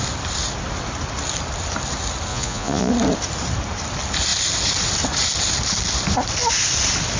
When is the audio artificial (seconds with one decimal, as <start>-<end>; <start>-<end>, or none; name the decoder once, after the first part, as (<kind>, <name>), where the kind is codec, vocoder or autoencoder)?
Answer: 2.3-2.9 (vocoder, Vocos)